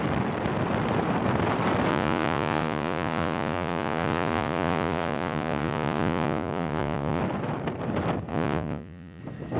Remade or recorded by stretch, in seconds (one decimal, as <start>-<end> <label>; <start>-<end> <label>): 0.0-1.9 recorded; 1.9-7.2 remade; 7.2-8.3 recorded; 8.3-9.2 remade; 9.2-9.6 recorded